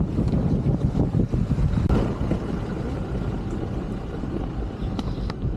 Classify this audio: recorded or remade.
recorded